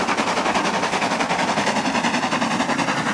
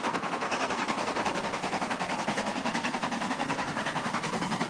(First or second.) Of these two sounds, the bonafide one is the first